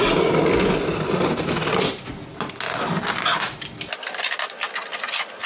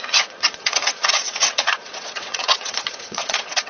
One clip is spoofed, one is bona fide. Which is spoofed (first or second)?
second